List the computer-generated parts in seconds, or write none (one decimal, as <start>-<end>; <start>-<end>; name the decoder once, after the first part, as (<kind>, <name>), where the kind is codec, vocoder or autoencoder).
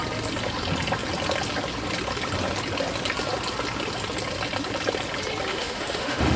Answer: 5.5-6.4 (autoencoder, DAC-VAE)